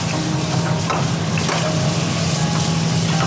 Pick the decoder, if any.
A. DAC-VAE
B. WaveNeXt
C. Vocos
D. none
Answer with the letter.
D